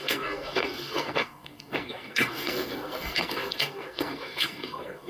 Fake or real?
fake